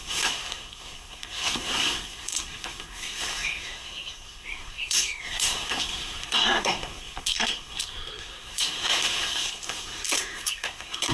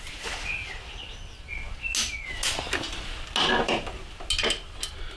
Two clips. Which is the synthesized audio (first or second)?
first